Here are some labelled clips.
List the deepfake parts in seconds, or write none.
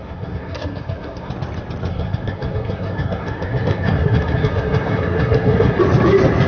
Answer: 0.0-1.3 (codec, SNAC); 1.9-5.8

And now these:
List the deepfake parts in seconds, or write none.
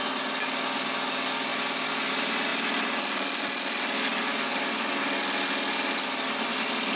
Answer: none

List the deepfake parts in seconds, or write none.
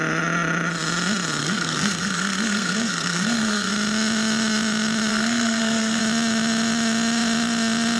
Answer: 1.4-3.7 (codec, SNAC); 5.1-6.0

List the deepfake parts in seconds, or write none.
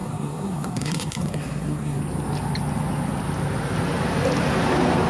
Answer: 0.0-2.0 (codec, SNAC)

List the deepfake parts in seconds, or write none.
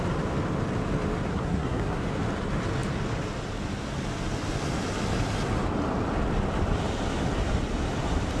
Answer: 1.3-2.0 (codec, SNAC)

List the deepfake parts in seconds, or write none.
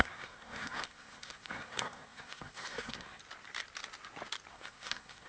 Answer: 0.0-3.2 (codec, SNAC); 4.5-5.3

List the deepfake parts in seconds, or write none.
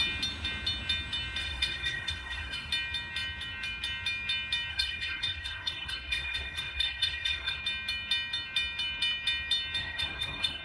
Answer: 1.4-2.7 (codec, SNAC); 4.7-7.6; 9.8-10.6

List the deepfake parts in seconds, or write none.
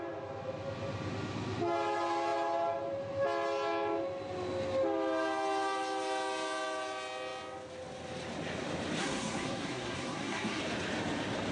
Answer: 9.0-10.6 (codec, SNAC)